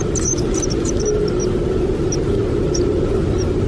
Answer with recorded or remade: recorded